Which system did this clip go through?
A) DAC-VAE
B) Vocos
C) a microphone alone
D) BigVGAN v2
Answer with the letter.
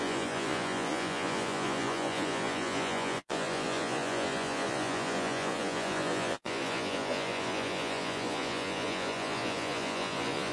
B